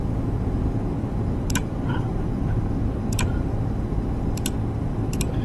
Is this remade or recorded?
recorded